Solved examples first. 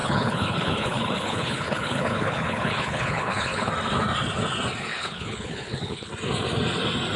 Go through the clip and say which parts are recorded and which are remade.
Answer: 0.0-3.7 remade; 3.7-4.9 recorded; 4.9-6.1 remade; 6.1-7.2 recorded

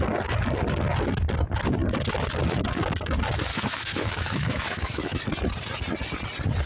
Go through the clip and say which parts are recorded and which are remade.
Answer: 0.0-3.5 recorded; 3.5-5.2 remade; 5.2-6.7 recorded

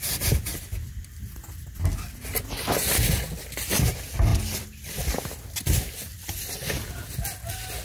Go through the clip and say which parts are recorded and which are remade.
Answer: 0.0-0.5 recorded; 0.5-1.0 remade; 1.0-4.3 recorded; 4.3-5.6 remade; 5.6-7.8 recorded

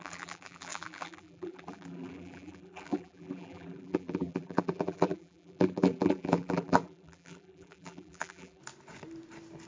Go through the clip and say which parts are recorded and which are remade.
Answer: 0.0-8.6 remade; 8.6-9.7 recorded

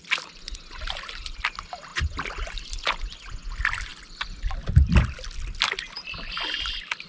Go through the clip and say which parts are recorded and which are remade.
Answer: 0.0-7.1 recorded

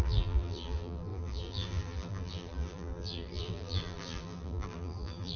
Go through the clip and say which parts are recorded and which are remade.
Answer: 0.0-5.4 remade